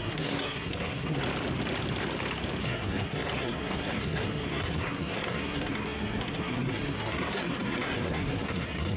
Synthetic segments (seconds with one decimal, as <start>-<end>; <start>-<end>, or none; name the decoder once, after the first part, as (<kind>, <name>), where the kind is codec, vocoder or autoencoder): 0.0-1.2 (codec, SNAC); 2.6-9.0